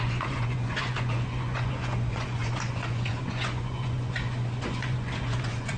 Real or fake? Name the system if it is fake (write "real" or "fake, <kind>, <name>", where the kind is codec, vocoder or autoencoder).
fake, vocoder, Vocos